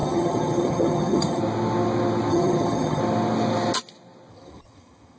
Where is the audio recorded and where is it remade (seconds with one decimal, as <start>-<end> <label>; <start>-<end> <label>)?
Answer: 0.0-1.4 remade; 1.4-2.3 recorded; 2.3-3.0 remade; 3.0-4.3 recorded; 4.3-5.2 remade